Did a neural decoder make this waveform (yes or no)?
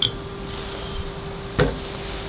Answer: no